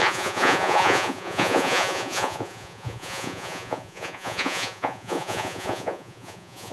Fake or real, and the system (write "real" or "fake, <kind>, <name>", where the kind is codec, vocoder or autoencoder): fake, vocoder, Vocos